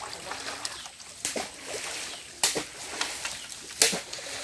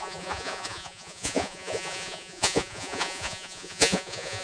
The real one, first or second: first